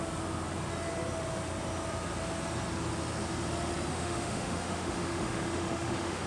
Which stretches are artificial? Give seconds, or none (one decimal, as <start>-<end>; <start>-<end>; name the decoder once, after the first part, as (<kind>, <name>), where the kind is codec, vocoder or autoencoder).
3.9-6.3 (autoencoder, DAC-VAE)